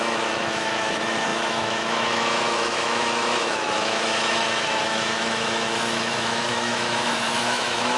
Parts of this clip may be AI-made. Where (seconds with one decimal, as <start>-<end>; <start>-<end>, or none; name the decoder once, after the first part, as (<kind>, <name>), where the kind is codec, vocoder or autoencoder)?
0.0-8.0 (autoencoder, DAC-VAE)